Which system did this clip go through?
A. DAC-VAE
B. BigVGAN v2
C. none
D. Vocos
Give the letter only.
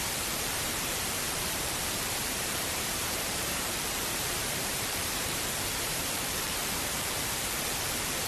B